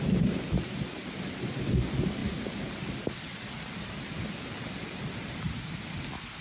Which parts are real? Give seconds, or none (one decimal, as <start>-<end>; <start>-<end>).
2.2-6.0

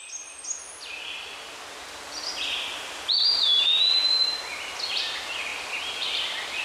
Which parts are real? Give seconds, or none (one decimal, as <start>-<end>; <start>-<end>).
0.0-6.6

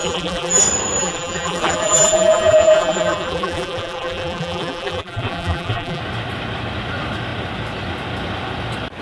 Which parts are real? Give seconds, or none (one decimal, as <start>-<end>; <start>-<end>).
0.6-1.0; 6.0-9.0

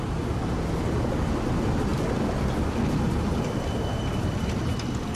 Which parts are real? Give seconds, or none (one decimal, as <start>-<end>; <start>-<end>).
0.0-1.9; 4.6-5.2

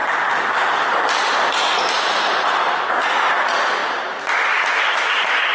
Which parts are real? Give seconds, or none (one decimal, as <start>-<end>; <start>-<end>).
2.9-3.8; 5.1-5.5

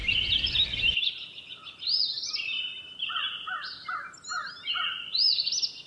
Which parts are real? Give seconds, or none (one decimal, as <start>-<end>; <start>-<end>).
3.2-4.4; 5.5-5.9

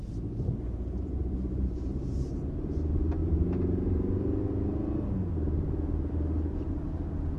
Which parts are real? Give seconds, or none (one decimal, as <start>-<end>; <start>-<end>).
0.0-1.2; 2.4-7.4